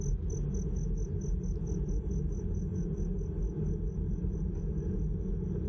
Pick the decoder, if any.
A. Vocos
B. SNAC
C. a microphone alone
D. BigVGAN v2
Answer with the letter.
C